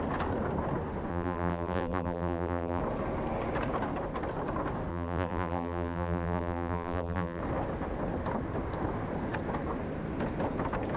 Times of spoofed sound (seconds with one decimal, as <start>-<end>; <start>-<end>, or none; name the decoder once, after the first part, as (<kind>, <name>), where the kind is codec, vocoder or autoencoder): 1.1-2.8 (vocoder, BigVGAN v2); 4.9-7.4